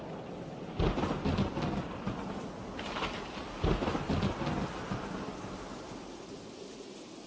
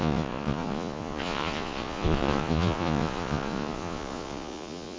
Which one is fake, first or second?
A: second